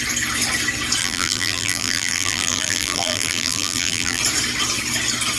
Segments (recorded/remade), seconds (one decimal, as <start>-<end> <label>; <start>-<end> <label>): 0.0-1.0 recorded; 1.0-4.2 remade; 4.2-5.4 recorded